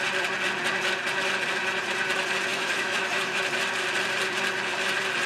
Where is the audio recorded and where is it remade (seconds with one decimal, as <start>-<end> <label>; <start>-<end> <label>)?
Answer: 0.0-2.5 recorded; 2.5-3.4 remade; 3.4-5.3 recorded

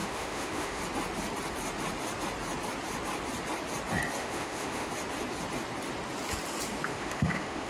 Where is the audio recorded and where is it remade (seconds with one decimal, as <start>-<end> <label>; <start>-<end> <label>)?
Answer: 0.0-0.8 remade; 0.8-4.2 recorded; 4.2-4.9 remade; 4.9-6.9 recorded; 6.9-7.7 remade

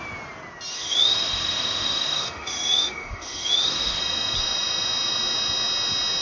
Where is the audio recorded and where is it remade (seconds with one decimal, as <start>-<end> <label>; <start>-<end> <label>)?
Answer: 0.0-0.7 recorded; 0.7-4.0 remade; 4.0-6.2 recorded